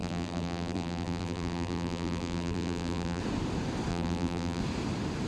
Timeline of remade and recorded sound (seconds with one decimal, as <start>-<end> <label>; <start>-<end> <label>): 0.0-3.2 remade; 3.2-3.9 recorded; 3.9-4.6 remade; 4.6-5.3 recorded